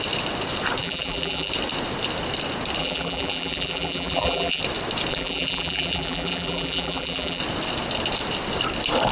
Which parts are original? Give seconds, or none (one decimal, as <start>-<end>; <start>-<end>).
0.0-0.8; 1.5-2.8; 4.6-5.1; 7.4-9.1